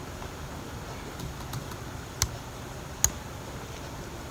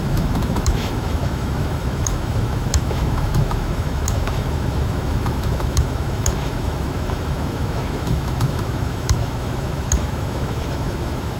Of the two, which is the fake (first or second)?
second